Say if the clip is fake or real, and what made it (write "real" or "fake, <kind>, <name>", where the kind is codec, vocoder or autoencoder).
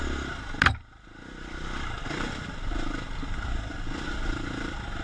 fake, vocoder, BigVGAN v2